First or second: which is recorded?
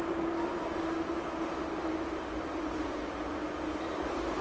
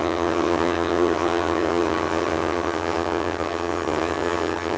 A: first